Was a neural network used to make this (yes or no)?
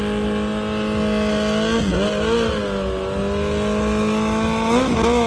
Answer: no